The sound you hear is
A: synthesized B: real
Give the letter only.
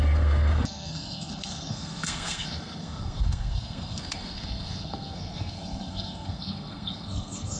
A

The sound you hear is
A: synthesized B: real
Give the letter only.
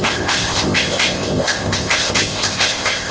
A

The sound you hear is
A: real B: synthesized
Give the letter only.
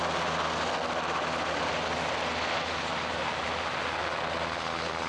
A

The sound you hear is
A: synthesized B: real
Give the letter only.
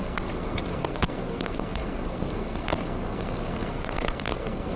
A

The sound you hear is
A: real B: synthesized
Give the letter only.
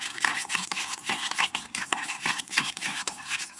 B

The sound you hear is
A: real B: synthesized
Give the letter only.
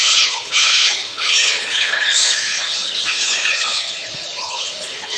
B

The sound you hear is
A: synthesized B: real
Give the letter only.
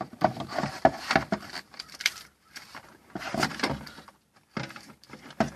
A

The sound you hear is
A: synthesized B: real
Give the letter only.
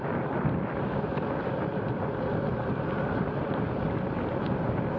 B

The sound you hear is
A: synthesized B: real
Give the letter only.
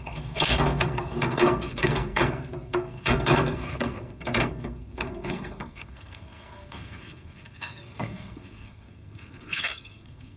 A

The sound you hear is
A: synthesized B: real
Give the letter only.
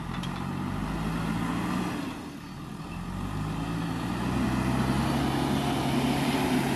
B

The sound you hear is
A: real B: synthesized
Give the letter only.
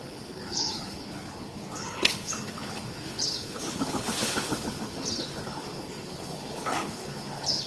B